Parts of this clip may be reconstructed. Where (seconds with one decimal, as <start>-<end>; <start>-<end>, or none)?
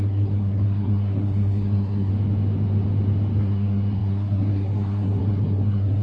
0.0-2.1; 3.4-6.0